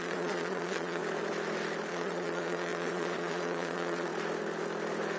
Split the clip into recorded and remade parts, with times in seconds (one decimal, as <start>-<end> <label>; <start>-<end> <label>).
0.0-1.0 remade; 1.0-1.9 recorded; 1.9-4.1 remade; 4.1-5.2 recorded